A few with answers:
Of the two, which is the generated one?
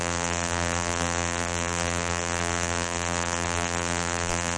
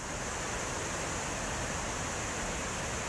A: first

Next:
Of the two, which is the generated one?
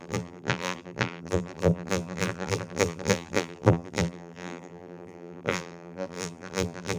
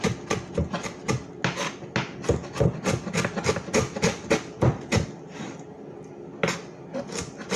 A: first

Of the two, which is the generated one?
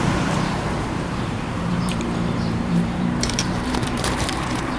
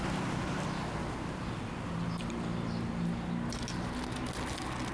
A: first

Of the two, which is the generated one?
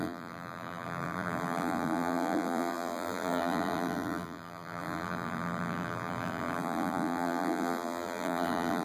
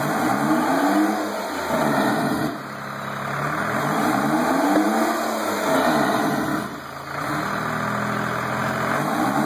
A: first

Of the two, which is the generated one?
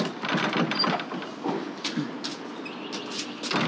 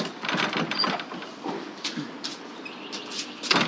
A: second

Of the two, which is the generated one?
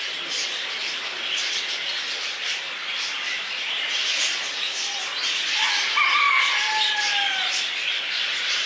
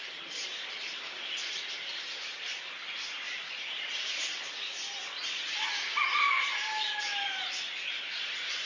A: second